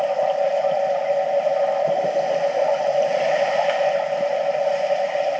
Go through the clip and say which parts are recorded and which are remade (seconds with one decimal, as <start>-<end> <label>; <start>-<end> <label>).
0.0-5.4 recorded

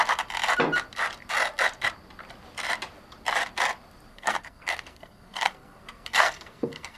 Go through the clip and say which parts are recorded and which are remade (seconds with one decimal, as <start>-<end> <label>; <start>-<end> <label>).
0.0-4.1 recorded; 4.1-7.0 remade

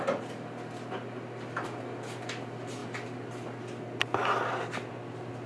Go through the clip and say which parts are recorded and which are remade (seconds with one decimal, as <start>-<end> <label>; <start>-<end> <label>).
0.0-5.5 recorded

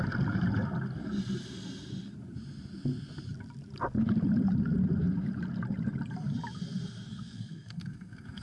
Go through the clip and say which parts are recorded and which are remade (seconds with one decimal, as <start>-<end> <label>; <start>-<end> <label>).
0.0-7.1 recorded; 7.1-8.4 remade

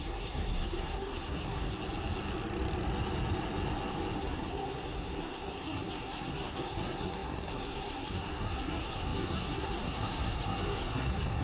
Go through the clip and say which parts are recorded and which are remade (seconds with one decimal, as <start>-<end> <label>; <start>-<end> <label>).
0.0-1.7 remade; 1.7-4.2 recorded; 4.2-11.4 remade

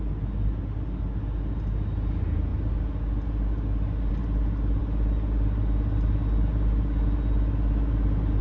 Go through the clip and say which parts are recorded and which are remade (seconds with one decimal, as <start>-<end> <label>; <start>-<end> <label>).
0.0-8.4 recorded

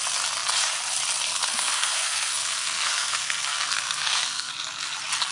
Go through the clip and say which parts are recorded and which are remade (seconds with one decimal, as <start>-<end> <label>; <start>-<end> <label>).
0.0-1.3 recorded; 1.3-4.5 remade; 4.5-5.3 recorded